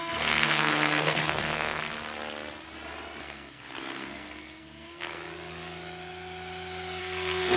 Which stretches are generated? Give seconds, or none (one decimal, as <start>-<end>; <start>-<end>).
0.0-1.8; 3.2-5.2; 7.0-7.6